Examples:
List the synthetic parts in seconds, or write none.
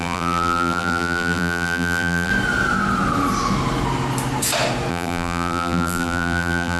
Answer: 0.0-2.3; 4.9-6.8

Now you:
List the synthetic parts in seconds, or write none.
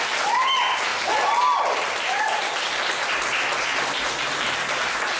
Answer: 0.9-4.0